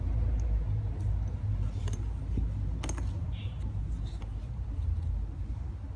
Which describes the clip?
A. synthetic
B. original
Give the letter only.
B